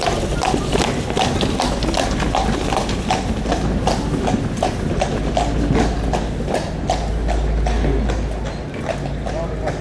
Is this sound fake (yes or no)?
no